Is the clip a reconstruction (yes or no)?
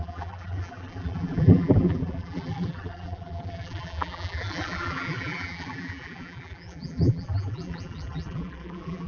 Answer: yes